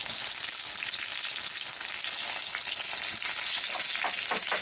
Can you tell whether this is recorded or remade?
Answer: recorded